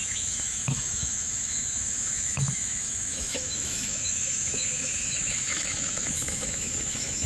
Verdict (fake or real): fake